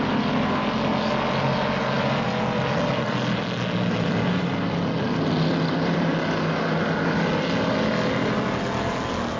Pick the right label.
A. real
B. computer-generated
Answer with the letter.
A